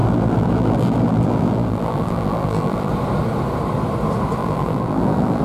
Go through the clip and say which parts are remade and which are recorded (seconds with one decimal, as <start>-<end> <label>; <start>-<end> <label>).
0.0-2.9 remade; 2.9-4.4 recorded; 4.4-5.4 remade